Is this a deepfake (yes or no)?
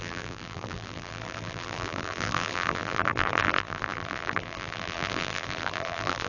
yes